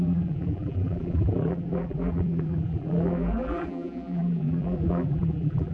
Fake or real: fake